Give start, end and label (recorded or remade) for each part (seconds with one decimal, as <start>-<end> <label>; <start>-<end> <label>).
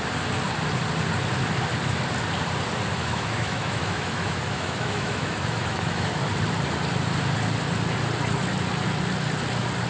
0.0-3.0 recorded; 3.0-6.2 remade; 6.2-9.9 recorded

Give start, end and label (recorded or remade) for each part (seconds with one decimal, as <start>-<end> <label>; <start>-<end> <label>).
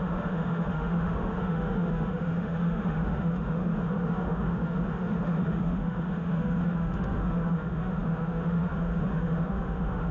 0.0-10.1 remade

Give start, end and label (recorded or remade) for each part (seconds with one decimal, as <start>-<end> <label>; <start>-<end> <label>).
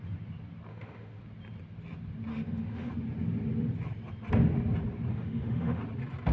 0.0-0.7 recorded; 0.7-1.2 remade; 1.2-2.3 recorded; 2.3-2.9 remade; 2.9-5.1 recorded; 5.1-5.8 remade; 5.8-6.3 recorded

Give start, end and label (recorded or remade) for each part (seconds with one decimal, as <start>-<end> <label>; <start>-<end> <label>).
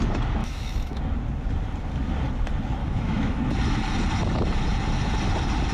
0.0-0.4 recorded; 0.4-1.0 remade; 1.0-2.8 recorded; 2.8-3.4 remade; 3.4-5.7 recorded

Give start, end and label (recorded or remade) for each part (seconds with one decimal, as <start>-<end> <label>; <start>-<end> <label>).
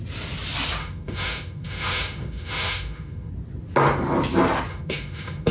0.0-0.8 recorded; 0.8-3.3 remade; 3.3-4.7 recorded; 4.7-5.5 remade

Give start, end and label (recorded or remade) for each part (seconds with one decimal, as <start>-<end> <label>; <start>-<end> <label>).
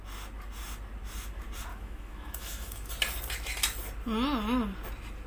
0.0-1.7 recorded; 1.7-2.9 remade; 2.9-5.3 recorded